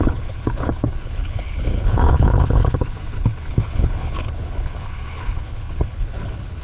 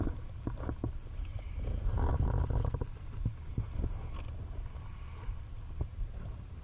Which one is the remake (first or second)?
first